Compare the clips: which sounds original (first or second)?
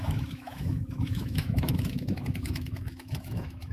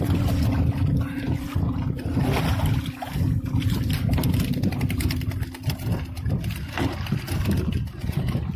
second